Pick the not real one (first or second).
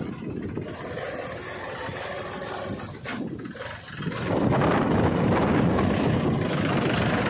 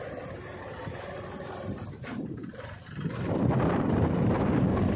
second